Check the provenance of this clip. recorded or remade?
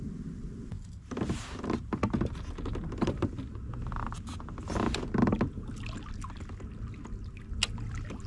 recorded